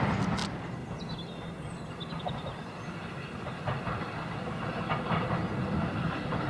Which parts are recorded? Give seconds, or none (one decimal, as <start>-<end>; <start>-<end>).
0.0-6.5